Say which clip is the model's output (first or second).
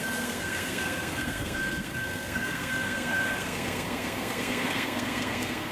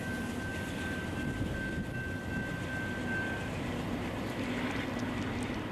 first